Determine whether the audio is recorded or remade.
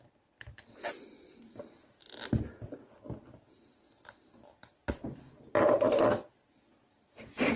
recorded